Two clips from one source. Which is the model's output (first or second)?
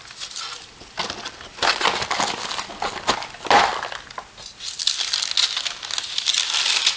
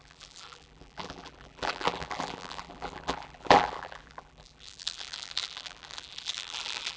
second